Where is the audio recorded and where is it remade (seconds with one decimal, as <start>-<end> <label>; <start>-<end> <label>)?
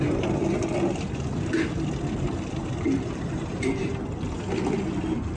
0.0-0.4 remade; 0.4-2.6 recorded; 2.6-3.9 remade; 3.9-5.0 recorded; 5.0-5.4 remade